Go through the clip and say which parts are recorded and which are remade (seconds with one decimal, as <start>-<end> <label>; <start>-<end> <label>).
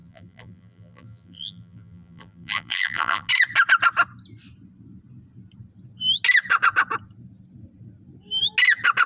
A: 0.0-3.3 remade; 3.3-9.1 recorded